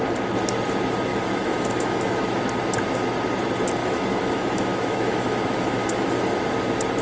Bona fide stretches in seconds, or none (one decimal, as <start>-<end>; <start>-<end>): 0.0-1.1; 2.4-3.8; 6.1-7.0